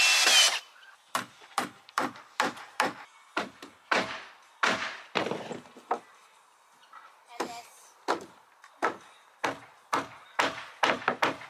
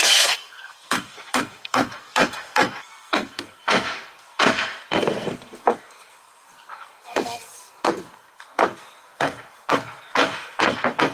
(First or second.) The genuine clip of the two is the first